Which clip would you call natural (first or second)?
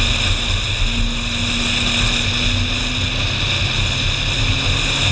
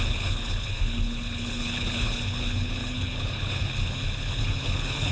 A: first